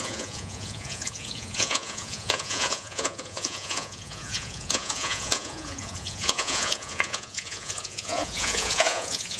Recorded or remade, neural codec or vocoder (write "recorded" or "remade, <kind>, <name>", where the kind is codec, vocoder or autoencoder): remade, vocoder, Vocos